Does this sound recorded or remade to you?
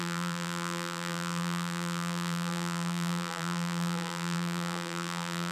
remade